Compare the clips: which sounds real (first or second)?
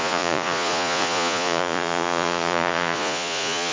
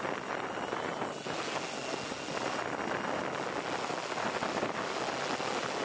second